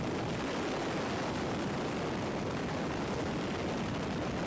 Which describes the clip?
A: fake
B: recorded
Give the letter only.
B